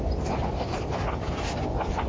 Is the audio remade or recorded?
remade